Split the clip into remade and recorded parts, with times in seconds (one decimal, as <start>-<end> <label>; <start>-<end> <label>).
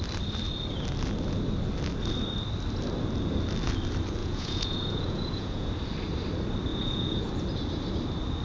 0.0-4.2 recorded; 4.2-5.7 remade; 5.7-6.7 recorded; 6.7-7.3 remade; 7.3-8.4 recorded